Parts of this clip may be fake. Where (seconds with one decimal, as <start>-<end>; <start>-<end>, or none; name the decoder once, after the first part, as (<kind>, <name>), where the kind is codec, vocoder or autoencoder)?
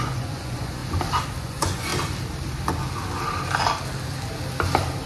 0.0-0.8 (vocoder, Vocos); 1.4-1.9